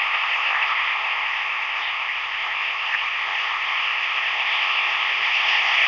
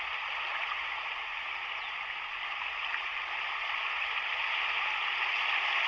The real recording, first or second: second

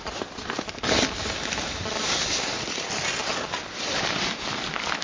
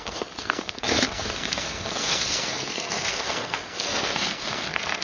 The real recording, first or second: first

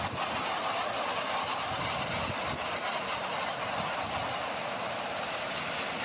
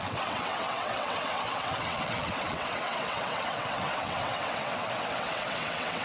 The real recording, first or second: first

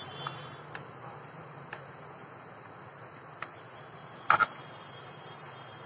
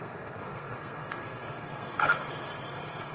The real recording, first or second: first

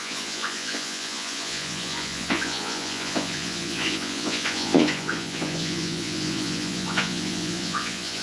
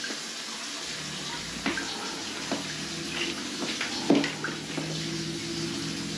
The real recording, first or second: second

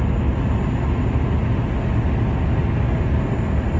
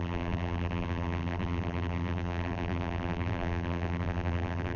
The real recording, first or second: first